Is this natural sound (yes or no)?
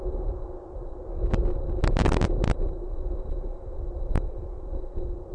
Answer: yes